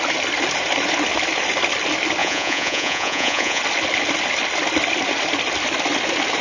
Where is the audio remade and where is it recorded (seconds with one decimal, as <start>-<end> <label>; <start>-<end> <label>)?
0.0-2.2 recorded; 2.2-3.6 remade; 3.6-6.4 recorded

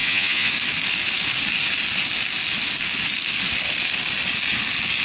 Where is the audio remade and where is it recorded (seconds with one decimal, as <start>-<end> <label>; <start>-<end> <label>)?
0.0-0.5 remade; 0.5-5.0 recorded